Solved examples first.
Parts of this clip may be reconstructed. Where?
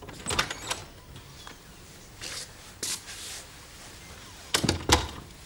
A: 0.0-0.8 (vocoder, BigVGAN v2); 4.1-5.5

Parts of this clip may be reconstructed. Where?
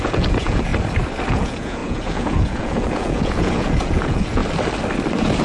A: 0.0-0.7 (vocoder, Vocos); 1.3-4.4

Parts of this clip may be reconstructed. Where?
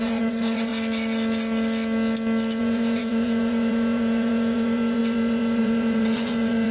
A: 0.0-0.7 (vocoder, Vocos); 2.6-6.7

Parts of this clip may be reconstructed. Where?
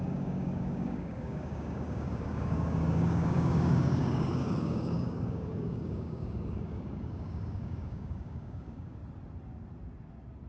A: 0.0-9.0 (codec, DAC)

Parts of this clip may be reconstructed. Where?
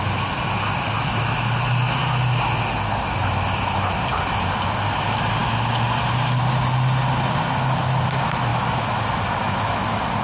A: none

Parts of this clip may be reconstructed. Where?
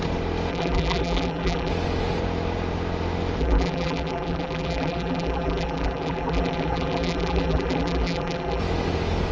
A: 0.5-1.7 (vocoder, BigVGAN v2); 3.4-8.6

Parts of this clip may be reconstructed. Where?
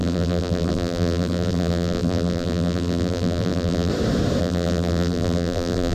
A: 0.0-3.9 (vocoder, BigVGAN v2); 4.4-5.9